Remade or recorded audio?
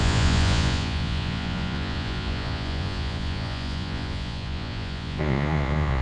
remade